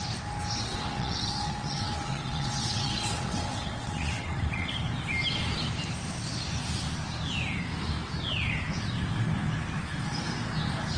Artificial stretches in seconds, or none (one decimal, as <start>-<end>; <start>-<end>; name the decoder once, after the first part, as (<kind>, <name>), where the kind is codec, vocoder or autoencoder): 0.7-4.7 (vocoder, WaveNeXt)